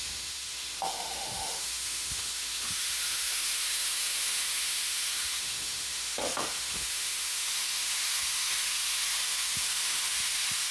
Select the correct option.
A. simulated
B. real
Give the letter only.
A